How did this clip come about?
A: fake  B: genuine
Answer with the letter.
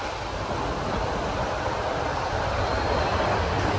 B